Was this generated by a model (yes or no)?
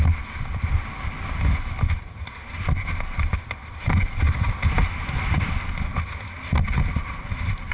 no